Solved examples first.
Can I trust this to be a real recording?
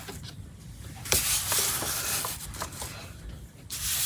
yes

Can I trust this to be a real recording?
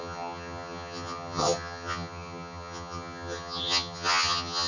no